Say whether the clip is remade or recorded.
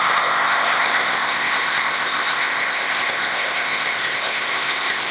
remade